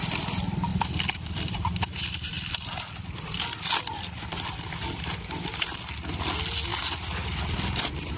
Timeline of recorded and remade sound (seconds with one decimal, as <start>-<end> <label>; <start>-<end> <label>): 0.0-0.7 recorded; 0.7-5.5 remade; 5.5-6.7 recorded; 6.7-7.4 remade; 7.4-8.2 recorded